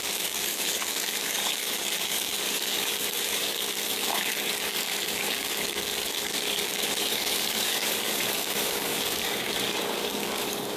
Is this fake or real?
fake